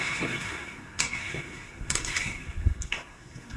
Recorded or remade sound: remade